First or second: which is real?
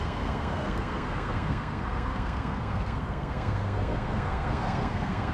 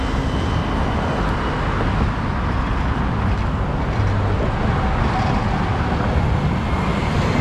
second